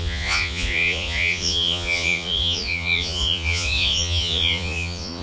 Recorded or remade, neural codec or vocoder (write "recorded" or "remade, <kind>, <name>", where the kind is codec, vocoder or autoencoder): remade, vocoder, Vocos